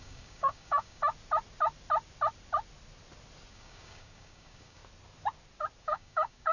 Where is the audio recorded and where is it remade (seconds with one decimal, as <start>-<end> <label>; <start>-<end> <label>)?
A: 0.0-1.0 remade; 1.0-3.5 recorded; 3.5-4.8 remade; 4.8-5.8 recorded; 5.8-6.5 remade